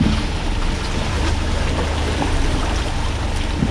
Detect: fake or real real